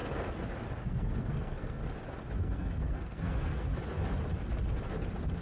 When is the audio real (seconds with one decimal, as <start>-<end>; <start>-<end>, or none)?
0.0-0.8; 1.8-2.4; 3.7-5.4

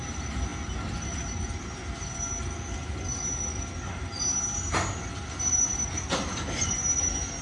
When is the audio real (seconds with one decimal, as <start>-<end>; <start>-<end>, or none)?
0.0-7.4